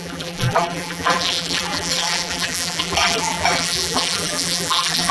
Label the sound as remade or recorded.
remade